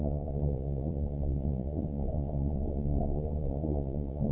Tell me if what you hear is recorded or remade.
remade